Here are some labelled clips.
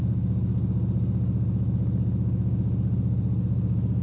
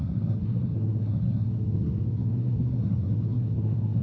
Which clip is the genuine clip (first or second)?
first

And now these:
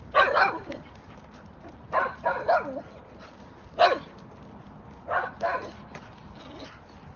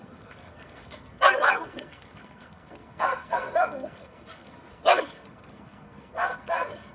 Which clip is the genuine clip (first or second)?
first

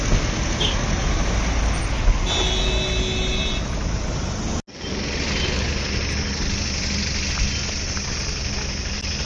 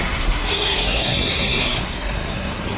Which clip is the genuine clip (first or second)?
first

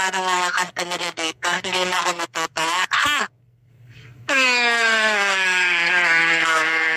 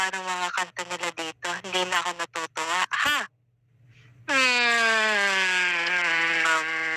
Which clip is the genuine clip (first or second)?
second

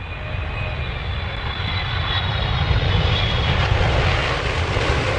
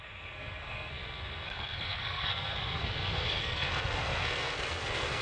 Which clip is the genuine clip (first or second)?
first